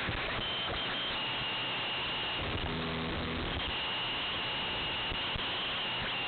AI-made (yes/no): no